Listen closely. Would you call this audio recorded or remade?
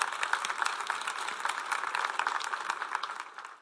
recorded